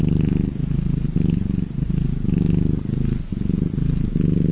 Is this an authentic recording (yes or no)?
yes